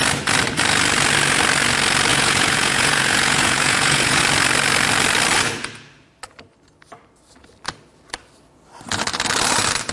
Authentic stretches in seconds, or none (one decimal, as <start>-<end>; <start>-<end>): 0.0-2.1; 4.2-9.9